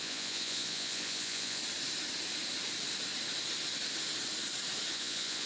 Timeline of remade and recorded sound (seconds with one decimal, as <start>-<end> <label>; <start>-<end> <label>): 0.0-1.6 remade; 1.6-4.9 recorded; 4.9-5.5 remade